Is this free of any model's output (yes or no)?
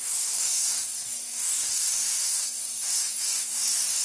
no